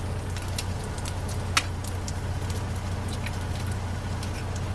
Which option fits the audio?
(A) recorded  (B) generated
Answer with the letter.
A